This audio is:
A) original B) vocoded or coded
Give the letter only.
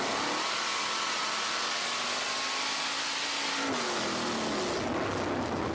A